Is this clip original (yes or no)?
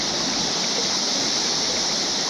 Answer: yes